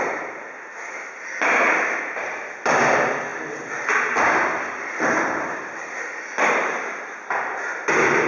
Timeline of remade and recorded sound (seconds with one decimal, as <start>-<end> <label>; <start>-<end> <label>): 0.0-8.3 recorded